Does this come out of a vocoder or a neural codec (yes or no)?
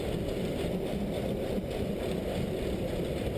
no